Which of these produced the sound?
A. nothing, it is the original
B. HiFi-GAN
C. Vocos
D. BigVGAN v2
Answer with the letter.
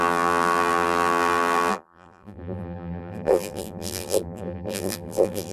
D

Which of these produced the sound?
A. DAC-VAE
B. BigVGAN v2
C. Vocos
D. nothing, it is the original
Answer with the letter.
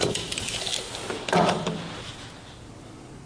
D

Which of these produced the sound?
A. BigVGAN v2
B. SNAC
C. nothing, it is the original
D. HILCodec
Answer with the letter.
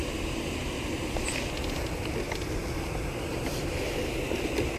C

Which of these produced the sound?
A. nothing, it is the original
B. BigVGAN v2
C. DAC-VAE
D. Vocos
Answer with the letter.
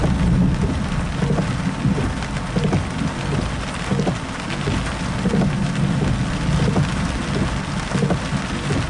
A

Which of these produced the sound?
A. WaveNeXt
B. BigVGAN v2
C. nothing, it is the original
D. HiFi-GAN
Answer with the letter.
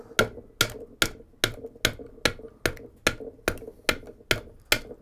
C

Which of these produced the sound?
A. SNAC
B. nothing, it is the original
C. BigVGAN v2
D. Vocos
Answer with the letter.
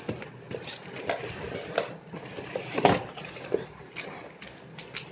B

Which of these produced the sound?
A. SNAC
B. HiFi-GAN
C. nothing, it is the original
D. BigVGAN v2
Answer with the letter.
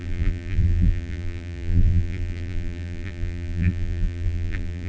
D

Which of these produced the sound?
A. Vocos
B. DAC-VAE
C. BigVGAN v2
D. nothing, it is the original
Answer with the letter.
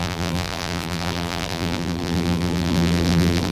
C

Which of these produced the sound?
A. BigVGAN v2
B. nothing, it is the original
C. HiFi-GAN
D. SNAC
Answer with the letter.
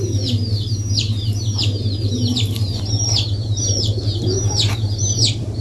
A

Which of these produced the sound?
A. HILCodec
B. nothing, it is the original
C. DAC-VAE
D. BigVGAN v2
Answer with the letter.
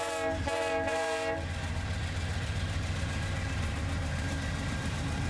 D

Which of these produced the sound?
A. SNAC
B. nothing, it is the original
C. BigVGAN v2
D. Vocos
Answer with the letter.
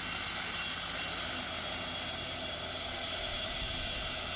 B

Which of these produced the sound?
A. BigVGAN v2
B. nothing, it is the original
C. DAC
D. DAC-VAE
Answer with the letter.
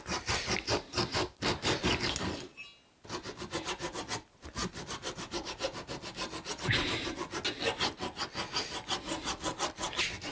B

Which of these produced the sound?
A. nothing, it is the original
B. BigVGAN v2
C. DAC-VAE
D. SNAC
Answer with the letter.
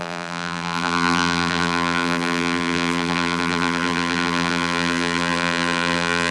B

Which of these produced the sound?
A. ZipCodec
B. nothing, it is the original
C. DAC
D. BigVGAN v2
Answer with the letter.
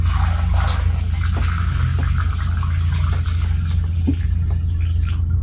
B